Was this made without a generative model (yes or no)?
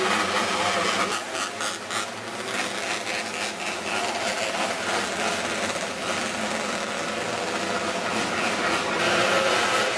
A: yes